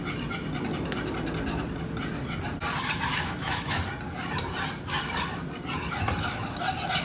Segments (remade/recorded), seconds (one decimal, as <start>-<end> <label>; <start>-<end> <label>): 0.0-3.1 recorded; 3.1-3.8 remade; 3.8-7.0 recorded